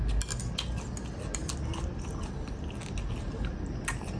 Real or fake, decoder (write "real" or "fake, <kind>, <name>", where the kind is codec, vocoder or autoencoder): real